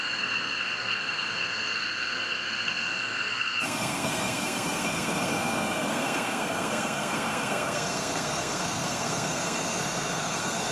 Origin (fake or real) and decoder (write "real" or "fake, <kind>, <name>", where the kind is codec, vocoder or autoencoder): fake, codec, SNAC